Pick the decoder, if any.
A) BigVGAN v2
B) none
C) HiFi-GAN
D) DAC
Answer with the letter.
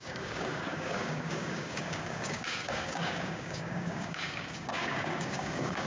D